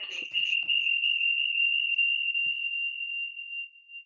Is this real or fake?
real